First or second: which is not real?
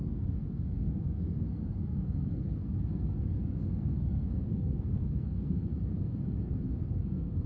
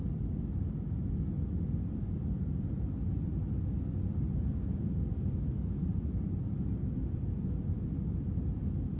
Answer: first